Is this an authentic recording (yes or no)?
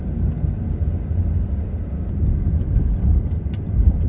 no